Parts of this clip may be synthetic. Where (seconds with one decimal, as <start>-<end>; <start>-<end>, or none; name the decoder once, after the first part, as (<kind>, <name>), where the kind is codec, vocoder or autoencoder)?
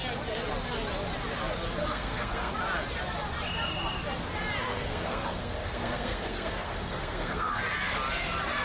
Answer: 1.8-2.5 (codec, SNAC); 4.7-7.6